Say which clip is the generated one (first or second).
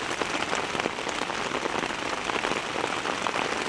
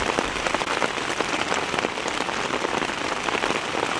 second